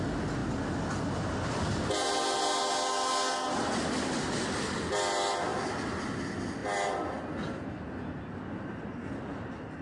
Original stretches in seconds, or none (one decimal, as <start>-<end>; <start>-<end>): 0.0-9.8